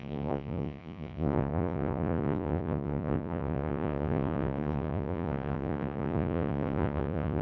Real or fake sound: fake